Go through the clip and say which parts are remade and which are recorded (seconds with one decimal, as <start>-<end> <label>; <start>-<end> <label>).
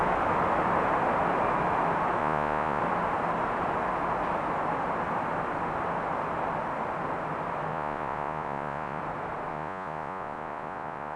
0.0-2.2 recorded; 2.2-2.8 remade; 2.8-7.7 recorded; 7.7-9.0 remade; 9.0-9.5 recorded; 9.5-11.2 remade